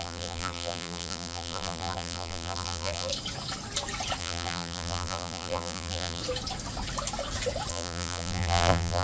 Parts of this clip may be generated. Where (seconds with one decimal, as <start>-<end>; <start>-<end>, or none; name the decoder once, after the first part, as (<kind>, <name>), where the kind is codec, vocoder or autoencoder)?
0.0-3.1 (vocoder, BigVGAN v2); 4.2-6.2; 7.7-9.0